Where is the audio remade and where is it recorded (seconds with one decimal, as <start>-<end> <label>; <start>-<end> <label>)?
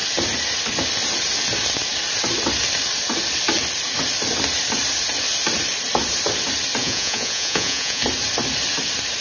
0.0-6.8 recorded; 6.8-8.0 remade; 8.0-9.2 recorded